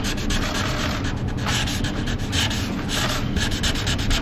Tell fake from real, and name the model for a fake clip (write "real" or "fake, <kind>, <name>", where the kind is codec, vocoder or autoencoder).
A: real